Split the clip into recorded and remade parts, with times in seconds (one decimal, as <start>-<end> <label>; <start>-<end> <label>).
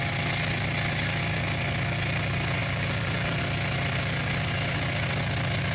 0.0-2.6 recorded; 2.6-3.4 remade; 3.4-5.7 recorded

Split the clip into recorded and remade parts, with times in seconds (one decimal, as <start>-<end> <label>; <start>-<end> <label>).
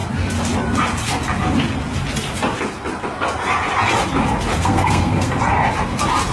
0.0-4.5 recorded; 4.5-5.4 remade; 5.4-6.3 recorded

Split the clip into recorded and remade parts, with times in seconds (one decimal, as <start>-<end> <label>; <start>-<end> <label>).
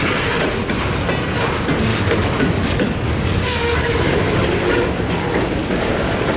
0.0-1.9 recorded; 1.9-4.7 remade; 4.7-5.6 recorded; 5.6-6.4 remade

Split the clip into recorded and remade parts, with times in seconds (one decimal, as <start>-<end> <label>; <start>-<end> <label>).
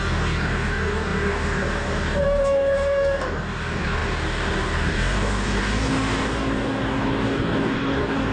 0.0-8.3 remade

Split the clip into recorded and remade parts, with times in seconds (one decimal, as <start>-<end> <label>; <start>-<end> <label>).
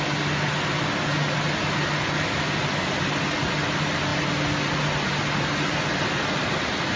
0.0-7.0 recorded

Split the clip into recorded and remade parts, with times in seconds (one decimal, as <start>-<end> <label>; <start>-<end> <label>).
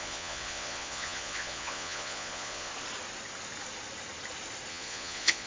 0.0-2.7 remade; 2.7-4.7 recorded; 4.7-5.5 remade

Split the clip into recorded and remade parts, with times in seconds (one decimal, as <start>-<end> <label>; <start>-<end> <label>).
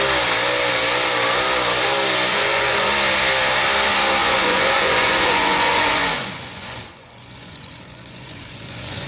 0.0-2.3 recorded; 2.3-2.9 remade; 2.9-4.2 recorded; 4.2-9.1 remade